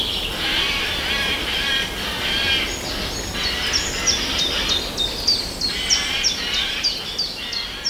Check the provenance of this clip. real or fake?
real